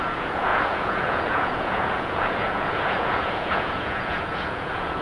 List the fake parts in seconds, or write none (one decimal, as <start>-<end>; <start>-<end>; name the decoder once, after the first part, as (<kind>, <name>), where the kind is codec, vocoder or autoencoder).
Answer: 0.0-5.0 (vocoder, Vocos)